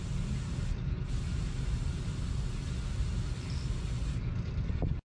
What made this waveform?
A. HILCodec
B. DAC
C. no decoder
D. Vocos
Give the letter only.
C